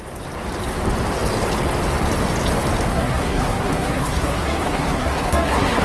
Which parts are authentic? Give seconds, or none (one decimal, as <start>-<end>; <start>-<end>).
0.0-2.9